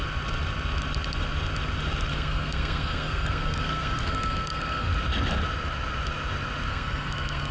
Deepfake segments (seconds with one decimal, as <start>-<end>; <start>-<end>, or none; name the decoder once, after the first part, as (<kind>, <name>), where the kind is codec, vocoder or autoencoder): 2.1-4.9 (codec, SNAC); 6.7-7.5